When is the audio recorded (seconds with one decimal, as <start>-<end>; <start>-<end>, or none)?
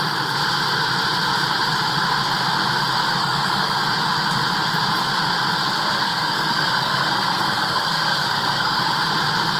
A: 0.0-3.2; 3.8-6.0; 8.8-9.6